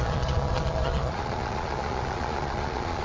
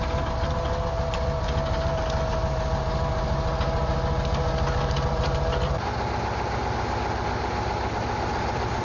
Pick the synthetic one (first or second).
first